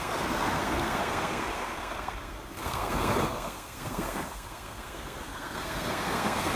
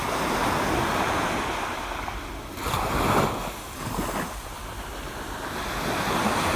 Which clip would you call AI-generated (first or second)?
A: first